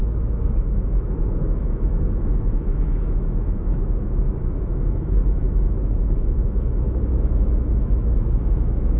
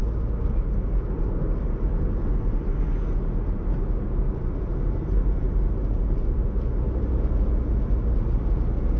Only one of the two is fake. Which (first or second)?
first